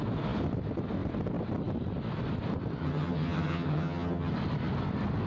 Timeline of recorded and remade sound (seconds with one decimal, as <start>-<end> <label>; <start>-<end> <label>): 0.0-2.8 recorded; 2.8-4.3 remade; 4.3-5.3 recorded

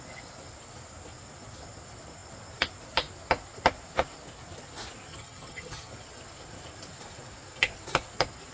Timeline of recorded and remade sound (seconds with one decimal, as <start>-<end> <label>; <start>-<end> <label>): 0.0-5.1 recorded; 5.1-5.9 remade; 5.9-8.5 recorded

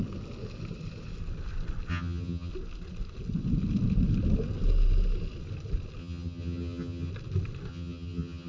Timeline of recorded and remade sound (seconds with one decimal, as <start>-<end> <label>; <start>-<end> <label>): 0.0-1.9 recorded; 1.9-2.5 remade; 2.5-6.0 recorded; 6.0-7.1 remade; 7.1-7.7 recorded; 7.7-8.5 remade

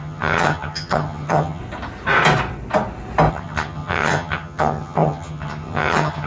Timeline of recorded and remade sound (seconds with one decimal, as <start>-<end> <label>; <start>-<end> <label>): 0.0-1.6 remade; 1.6-3.3 recorded; 3.3-6.3 remade